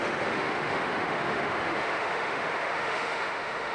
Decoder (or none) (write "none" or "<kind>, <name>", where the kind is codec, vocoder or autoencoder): autoencoder, DAC-VAE